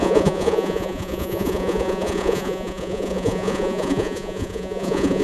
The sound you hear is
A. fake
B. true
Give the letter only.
A